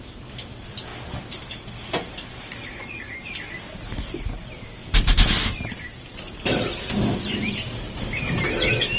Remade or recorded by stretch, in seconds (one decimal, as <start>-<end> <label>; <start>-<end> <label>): 0.0-9.0 recorded